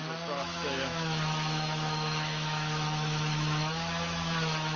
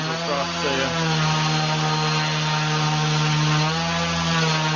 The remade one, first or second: first